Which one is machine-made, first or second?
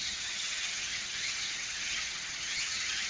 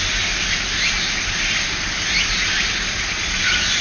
first